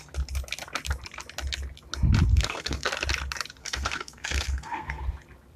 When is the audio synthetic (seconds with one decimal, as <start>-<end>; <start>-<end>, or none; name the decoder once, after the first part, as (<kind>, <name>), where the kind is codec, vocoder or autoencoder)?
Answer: 2.3-2.9 (codec, SNAC); 3.6-5.0